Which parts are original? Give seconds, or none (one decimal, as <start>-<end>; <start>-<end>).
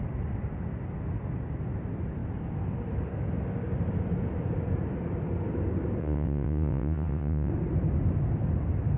0.0-6.0; 7.5-9.0